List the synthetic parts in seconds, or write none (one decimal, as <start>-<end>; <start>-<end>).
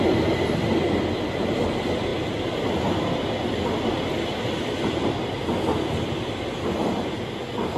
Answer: none